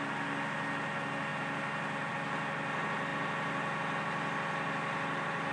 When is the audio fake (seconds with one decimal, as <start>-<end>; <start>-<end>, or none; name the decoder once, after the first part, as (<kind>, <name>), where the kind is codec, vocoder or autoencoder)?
none